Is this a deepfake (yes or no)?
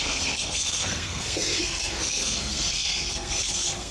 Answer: yes